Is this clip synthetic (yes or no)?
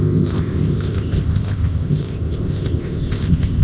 yes